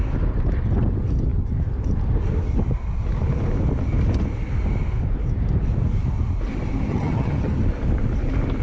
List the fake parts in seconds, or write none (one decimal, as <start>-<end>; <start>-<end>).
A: 6.9-7.6